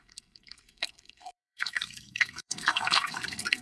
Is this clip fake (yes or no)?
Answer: yes